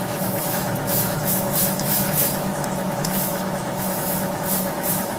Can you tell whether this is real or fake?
fake